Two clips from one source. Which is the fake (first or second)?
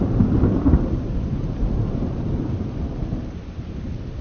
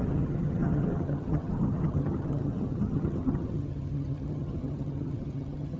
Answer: second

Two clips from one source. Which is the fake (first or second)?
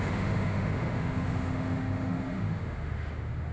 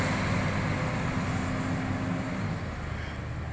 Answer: first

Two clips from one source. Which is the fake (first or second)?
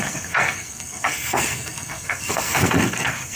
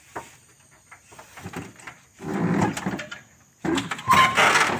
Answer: first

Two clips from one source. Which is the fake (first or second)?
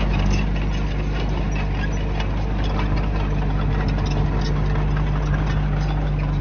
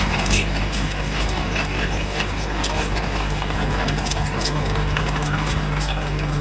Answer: second